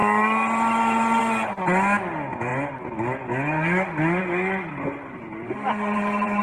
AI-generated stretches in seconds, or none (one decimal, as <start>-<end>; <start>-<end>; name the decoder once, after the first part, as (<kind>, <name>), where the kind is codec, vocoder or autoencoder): 4.7-6.4 (vocoder, BigVGAN v2)